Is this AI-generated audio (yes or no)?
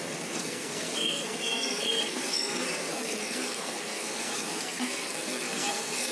yes